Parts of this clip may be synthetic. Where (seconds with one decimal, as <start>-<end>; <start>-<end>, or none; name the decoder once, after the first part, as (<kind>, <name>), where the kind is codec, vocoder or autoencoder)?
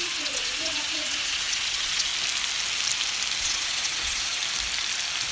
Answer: 0.0-2.1 (vocoder, Vocos); 3.4-4.4